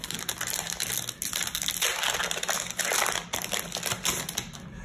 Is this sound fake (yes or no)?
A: no